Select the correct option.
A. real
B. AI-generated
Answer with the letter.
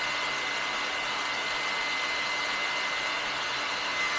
A